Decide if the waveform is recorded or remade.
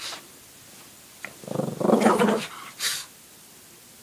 recorded